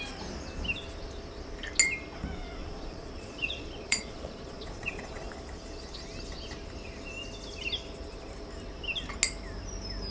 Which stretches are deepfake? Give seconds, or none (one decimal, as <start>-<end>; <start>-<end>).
2.6-5.3